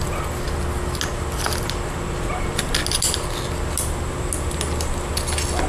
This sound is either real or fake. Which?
real